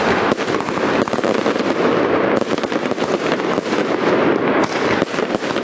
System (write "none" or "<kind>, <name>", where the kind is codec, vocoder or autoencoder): none